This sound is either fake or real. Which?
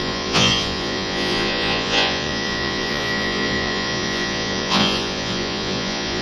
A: fake